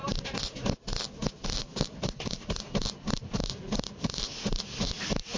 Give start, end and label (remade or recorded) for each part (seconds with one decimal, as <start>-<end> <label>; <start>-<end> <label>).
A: 0.0-5.4 recorded